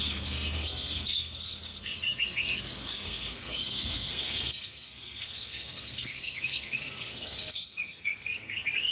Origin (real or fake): fake